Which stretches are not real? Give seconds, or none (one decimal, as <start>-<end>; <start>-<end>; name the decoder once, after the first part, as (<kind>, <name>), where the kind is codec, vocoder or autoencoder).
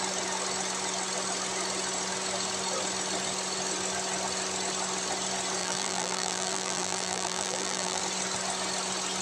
5.6-8.0 (vocoder, BigVGAN v2)